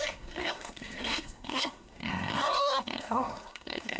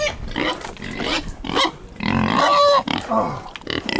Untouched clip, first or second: second